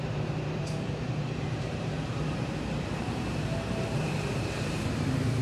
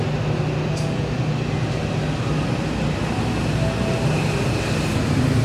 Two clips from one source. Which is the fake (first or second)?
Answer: first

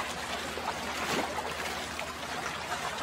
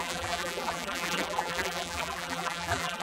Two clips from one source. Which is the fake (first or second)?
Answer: second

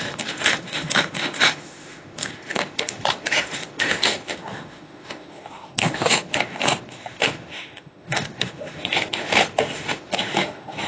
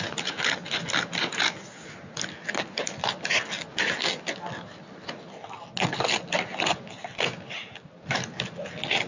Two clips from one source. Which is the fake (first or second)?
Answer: first